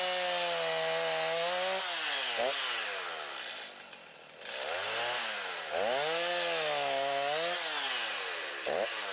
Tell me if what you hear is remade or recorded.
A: recorded